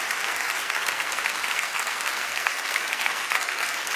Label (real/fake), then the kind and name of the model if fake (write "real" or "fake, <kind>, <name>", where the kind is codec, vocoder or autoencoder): fake, codec, SNAC